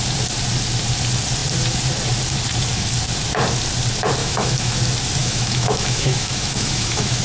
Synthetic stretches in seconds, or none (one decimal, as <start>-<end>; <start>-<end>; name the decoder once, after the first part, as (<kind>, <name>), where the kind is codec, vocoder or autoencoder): 4.2-4.8 (autoencoder, DAC-VAE); 5.2-7.2